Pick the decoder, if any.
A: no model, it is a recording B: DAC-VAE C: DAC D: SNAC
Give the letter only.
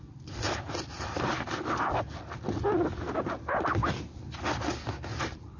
A